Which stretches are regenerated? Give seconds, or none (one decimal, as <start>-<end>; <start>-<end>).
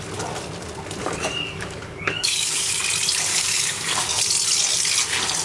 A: 1.0-2.8; 3.3-4.2